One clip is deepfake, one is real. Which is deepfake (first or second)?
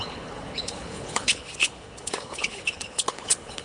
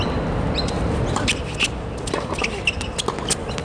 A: first